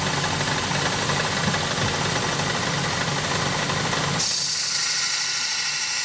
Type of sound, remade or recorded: recorded